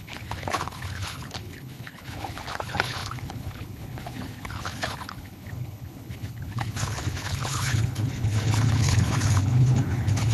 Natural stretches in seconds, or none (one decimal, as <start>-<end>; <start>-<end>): none